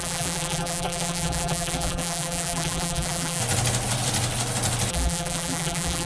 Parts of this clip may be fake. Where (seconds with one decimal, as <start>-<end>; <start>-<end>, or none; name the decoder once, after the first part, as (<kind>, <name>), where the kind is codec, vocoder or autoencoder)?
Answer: 0.0-3.4 (vocoder, BigVGAN v2); 4.9-6.1

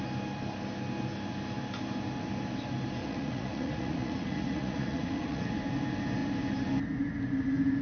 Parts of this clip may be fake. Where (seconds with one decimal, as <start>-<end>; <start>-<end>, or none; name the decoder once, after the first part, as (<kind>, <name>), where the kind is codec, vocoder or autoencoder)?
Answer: 3.0-5.5 (vocoder, Vocos)

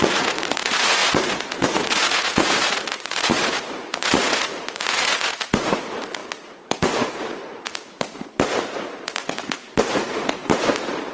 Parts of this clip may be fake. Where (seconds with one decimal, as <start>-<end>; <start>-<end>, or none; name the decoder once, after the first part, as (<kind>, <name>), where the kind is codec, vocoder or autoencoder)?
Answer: 0.0-10.4 (vocoder, Vocos)

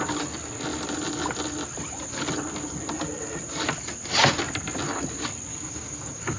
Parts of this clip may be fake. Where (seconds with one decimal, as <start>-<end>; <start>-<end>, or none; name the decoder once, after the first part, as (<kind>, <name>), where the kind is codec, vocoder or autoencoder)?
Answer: 5.5-6.4 (codec, DAC)